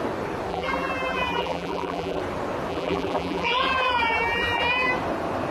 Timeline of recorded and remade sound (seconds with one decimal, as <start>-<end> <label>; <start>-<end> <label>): 0.0-0.5 recorded; 0.5-2.2 remade; 2.2-2.7 recorded; 2.7-4.9 remade; 4.9-5.5 recorded